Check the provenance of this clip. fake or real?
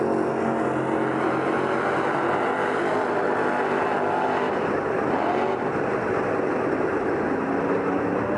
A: real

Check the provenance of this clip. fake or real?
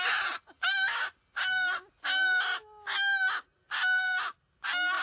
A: real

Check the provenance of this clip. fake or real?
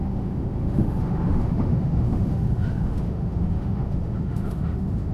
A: fake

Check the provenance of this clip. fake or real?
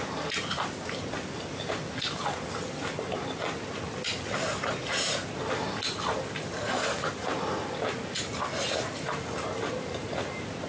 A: real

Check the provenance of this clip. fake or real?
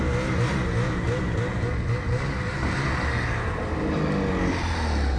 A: real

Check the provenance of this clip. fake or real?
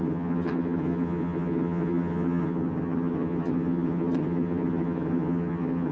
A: fake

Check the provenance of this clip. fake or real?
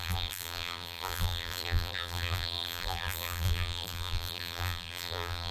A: fake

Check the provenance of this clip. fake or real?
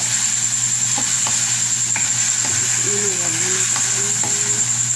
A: real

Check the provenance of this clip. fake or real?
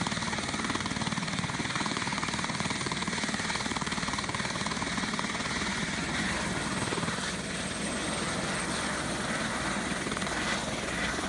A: fake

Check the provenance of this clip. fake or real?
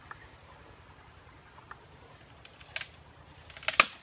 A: real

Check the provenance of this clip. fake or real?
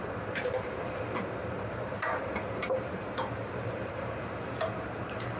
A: fake